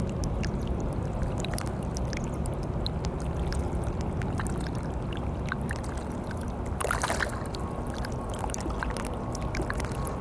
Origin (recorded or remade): recorded